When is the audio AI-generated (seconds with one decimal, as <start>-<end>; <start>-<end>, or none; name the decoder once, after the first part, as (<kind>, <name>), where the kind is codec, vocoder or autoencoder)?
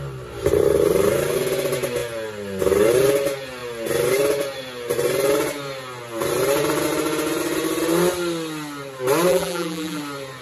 9.3-10.0 (vocoder, BigVGAN v2)